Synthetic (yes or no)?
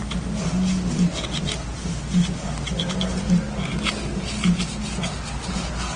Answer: no